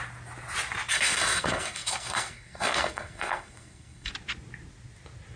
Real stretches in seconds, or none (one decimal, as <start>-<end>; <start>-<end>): 0.0-0.9; 4.1-5.4